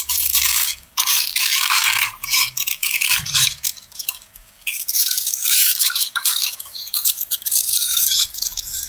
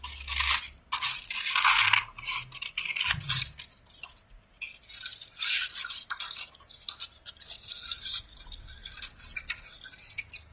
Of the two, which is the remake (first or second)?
first